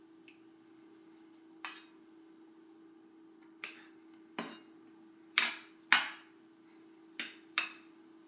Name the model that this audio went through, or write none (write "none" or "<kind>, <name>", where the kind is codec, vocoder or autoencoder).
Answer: none